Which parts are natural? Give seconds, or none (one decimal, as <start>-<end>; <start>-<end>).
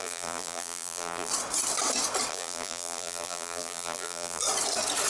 1.3-2.3; 4.4-5.1